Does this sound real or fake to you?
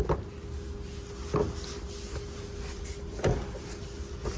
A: real